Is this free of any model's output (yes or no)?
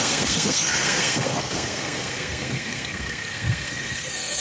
no